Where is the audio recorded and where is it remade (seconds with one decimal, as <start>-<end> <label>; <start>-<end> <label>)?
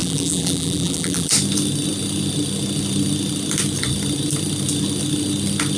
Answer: 0.0-1.3 remade; 1.3-5.8 recorded